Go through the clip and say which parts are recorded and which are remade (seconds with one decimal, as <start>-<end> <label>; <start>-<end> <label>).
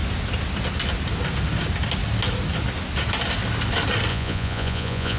0.0-4.1 recorded; 4.1-5.2 remade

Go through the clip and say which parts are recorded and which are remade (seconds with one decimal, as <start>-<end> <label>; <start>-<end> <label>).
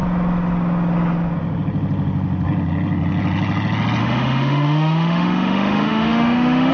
0.0-4.0 recorded; 4.0-6.7 remade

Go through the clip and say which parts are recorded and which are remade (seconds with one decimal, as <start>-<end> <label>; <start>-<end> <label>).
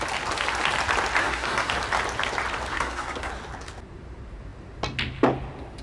0.0-1.2 recorded; 1.2-1.7 remade; 1.7-2.7 recorded; 2.7-3.3 remade; 3.3-5.8 recorded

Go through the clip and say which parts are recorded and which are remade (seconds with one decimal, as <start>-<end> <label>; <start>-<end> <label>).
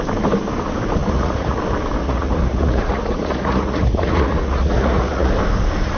0.0-1.0 recorded; 1.0-1.6 remade; 1.6-2.0 recorded; 2.0-5.3 remade; 5.3-6.0 recorded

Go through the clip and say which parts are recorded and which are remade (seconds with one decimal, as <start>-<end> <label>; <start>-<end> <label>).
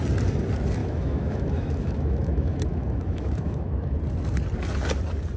0.0-0.8 recorded; 0.8-4.0 remade; 4.0-5.4 recorded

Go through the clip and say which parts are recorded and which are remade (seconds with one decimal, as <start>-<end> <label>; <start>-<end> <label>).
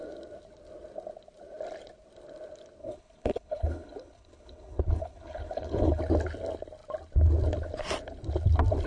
0.0-2.8 recorded; 2.8-6.0 remade; 6.0-8.9 recorded